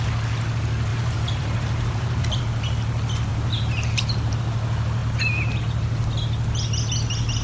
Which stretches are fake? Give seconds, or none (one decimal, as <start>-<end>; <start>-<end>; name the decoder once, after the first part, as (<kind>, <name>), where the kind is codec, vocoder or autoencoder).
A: 0.9-2.4 (vocoder, BigVGAN v2); 3.3-4.4